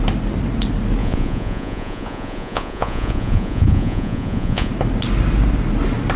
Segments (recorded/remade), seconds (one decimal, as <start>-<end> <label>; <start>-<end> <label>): 0.0-1.0 recorded; 1.0-4.7 remade; 4.7-6.2 recorded